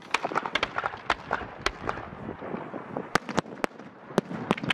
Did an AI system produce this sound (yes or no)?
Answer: no